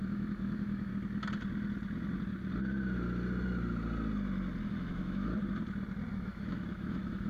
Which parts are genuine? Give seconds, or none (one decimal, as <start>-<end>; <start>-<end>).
0.9-4.7; 5.3-6.1